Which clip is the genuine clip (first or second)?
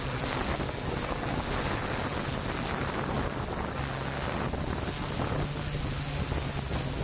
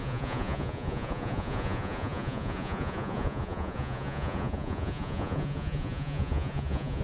first